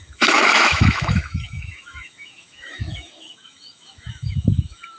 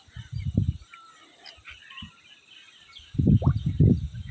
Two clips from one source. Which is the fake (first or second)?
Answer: first